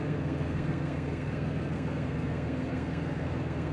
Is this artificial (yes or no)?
yes